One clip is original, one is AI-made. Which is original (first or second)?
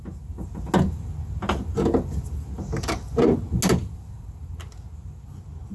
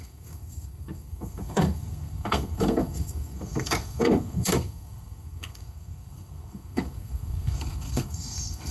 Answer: first